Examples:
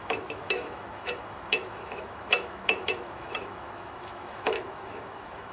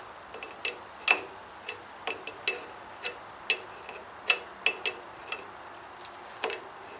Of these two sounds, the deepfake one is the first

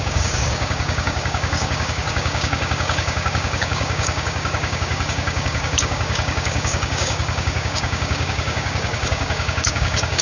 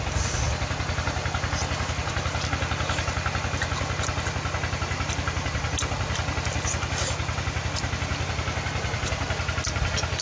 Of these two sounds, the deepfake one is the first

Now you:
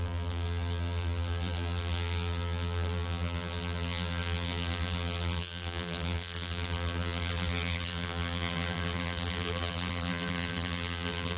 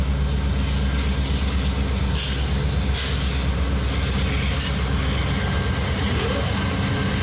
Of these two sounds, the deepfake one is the first